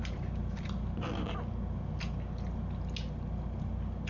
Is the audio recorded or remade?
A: recorded